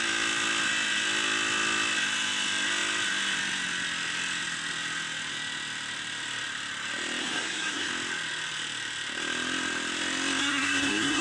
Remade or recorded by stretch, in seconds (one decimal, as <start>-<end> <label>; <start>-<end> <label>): 0.0-7.2 recorded; 7.2-7.9 remade; 7.9-10.4 recorded; 10.4-11.2 remade